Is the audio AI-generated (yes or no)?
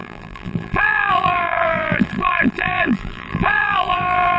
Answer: yes